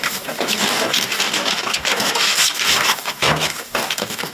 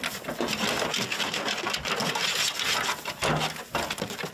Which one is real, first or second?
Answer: second